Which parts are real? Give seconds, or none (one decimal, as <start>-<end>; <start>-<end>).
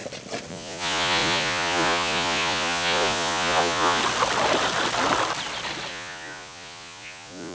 0.0-0.5; 4.0-5.9